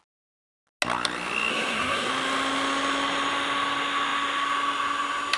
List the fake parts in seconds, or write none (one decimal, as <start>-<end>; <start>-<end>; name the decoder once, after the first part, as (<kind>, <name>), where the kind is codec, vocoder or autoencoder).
1.5-2.1 (codec, SNAC)